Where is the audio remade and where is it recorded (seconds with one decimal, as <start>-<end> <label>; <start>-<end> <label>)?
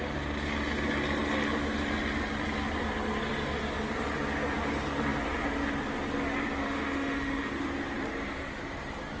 0.0-6.6 recorded; 6.6-7.5 remade; 7.5-9.2 recorded